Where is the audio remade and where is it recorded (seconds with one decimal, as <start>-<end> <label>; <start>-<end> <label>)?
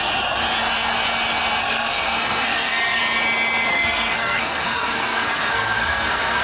0.0-0.4 remade; 0.4-1.6 recorded; 1.6-3.0 remade; 3.0-3.7 recorded; 3.7-6.4 remade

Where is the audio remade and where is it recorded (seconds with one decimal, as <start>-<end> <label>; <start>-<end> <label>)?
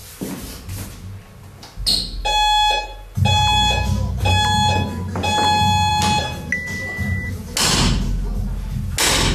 0.0-9.3 recorded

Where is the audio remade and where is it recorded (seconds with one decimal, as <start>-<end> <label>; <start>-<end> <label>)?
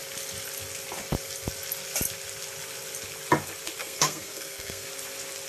0.0-3.8 recorded; 3.8-4.9 remade; 4.9-5.5 recorded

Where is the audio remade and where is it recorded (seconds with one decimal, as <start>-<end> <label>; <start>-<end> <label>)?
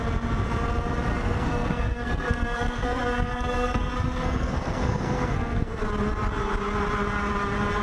0.0-1.1 recorded; 1.1-5.8 remade; 5.8-7.8 recorded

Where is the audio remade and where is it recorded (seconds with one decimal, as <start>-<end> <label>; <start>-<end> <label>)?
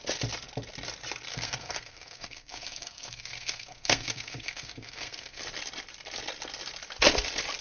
0.0-1.3 recorded; 1.3-5.4 remade; 5.4-7.6 recorded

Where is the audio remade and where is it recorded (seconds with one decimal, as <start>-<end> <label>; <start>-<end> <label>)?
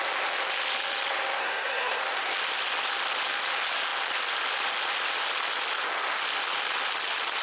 0.0-1.4 recorded; 1.4-2.0 remade; 2.0-7.4 recorded